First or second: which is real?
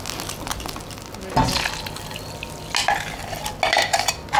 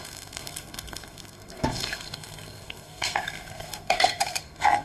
first